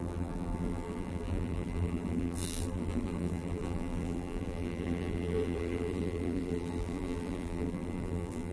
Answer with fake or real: fake